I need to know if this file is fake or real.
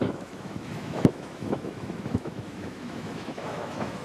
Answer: fake